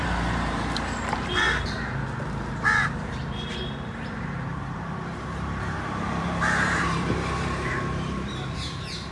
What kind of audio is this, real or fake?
fake